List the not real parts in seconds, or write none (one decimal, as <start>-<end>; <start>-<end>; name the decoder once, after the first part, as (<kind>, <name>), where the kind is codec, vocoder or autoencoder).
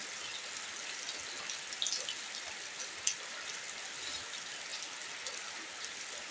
none